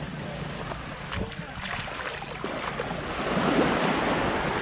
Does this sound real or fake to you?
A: real